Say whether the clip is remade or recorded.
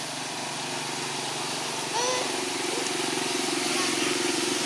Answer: recorded